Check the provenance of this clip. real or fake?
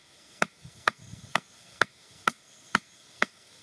fake